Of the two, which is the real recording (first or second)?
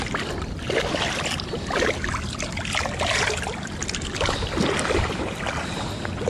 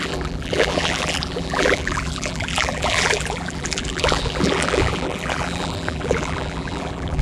first